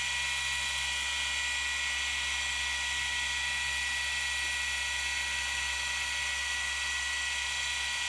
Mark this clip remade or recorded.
recorded